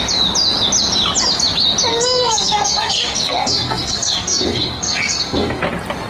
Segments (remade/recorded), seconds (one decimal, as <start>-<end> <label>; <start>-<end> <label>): 0.0-1.9 recorded; 1.9-5.6 remade; 5.6-6.1 recorded